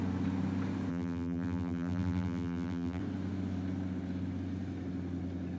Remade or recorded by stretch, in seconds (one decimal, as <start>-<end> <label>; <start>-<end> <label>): 0.0-0.9 recorded; 0.9-3.0 remade; 3.0-5.6 recorded